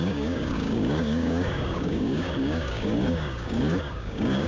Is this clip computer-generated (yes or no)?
yes